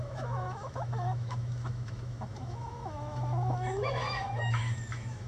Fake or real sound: fake